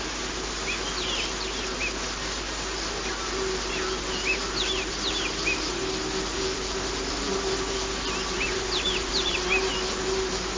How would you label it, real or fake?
real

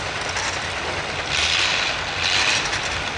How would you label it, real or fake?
real